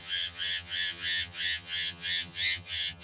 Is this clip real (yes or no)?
no